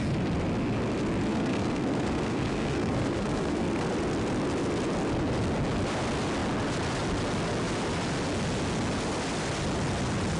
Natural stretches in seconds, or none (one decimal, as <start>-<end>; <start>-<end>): 0.0-1.3; 3.9-10.4